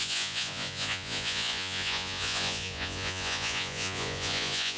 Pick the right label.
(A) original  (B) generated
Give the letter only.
B